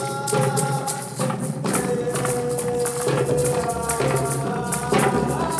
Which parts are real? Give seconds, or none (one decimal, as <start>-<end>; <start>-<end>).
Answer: 0.0-5.6